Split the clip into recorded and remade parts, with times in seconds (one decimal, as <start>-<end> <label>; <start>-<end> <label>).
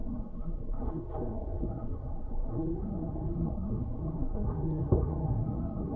0.0-6.0 remade